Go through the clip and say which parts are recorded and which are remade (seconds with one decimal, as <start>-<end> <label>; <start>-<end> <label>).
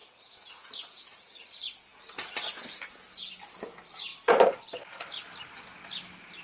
0.0-1.5 remade; 1.5-6.4 recorded